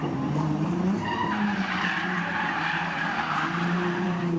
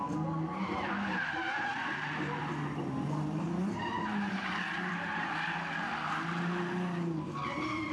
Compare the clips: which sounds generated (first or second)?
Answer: first